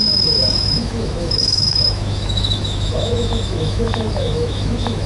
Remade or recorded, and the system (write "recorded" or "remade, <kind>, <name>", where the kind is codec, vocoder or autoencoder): remade, autoencoder, DAC-VAE